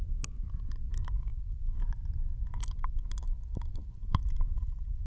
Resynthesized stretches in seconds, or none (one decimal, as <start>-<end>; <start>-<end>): none

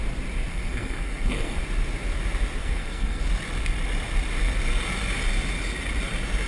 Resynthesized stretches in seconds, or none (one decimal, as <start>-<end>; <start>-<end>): 0.5-1.6; 2.6-3.2

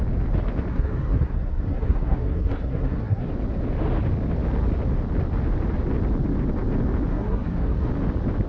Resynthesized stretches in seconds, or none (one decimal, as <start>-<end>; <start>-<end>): 0.7-3.3; 7.1-7.9

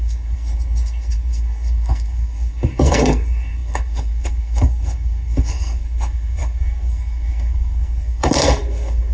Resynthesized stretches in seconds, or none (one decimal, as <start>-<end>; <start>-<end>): 0.0-9.1

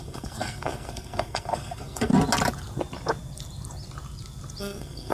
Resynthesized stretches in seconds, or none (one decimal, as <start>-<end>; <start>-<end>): 0.0-2.1; 4.6-5.1

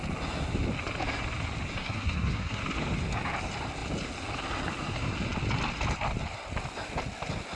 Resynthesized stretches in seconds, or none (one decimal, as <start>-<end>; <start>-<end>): 1.8-2.6